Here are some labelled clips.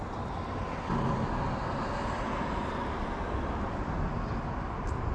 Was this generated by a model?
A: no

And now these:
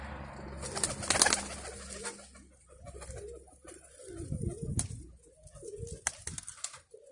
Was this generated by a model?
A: no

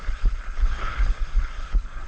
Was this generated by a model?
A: yes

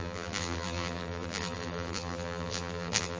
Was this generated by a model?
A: yes